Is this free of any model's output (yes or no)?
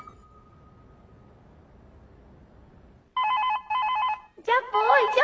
yes